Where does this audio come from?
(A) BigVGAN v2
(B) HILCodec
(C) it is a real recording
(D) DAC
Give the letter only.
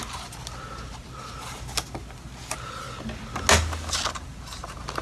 C